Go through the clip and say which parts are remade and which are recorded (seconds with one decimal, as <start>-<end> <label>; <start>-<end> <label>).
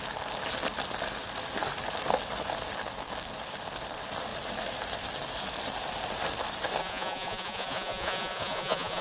0.0-6.8 recorded; 6.8-9.0 remade